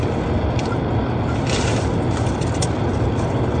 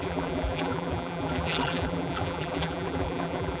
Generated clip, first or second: second